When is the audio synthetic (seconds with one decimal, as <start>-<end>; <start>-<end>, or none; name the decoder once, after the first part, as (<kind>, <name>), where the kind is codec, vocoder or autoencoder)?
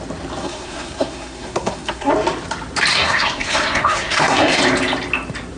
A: 0.4-2.1 (codec, SNAC); 2.9-4.6